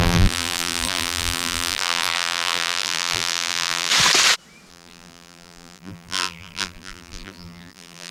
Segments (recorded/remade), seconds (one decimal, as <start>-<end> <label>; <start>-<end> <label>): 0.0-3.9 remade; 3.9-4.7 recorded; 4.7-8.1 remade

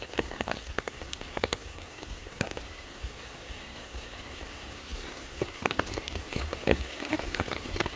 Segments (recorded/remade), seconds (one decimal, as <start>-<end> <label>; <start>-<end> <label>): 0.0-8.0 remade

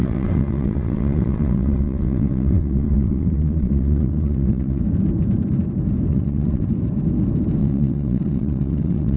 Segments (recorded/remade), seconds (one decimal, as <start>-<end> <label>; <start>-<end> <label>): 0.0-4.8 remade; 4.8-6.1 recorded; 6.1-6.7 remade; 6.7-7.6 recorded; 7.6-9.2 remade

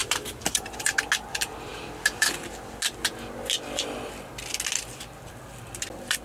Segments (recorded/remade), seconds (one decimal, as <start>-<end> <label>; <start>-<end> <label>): 0.0-1.0 remade; 1.0-6.2 recorded

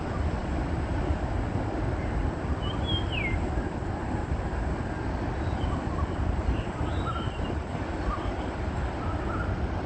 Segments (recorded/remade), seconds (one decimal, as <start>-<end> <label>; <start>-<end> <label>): 0.0-9.9 recorded

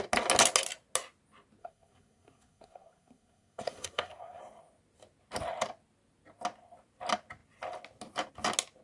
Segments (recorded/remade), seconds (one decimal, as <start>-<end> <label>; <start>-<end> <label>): 0.0-1.6 recorded; 1.6-4.4 remade; 4.4-8.8 recorded

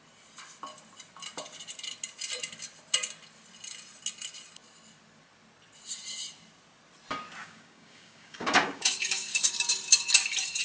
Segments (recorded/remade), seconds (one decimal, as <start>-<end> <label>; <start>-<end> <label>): 0.0-7.4 recorded; 7.4-9.5 remade; 9.5-10.6 recorded

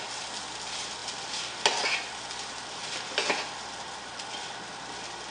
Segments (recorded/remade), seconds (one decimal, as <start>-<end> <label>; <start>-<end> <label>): 0.0-5.3 recorded